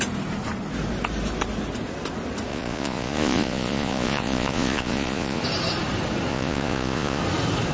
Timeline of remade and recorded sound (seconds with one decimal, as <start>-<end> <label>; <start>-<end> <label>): 0.0-2.5 recorded; 2.5-5.4 remade; 5.4-6.3 recorded; 6.3-7.2 remade; 7.2-7.7 recorded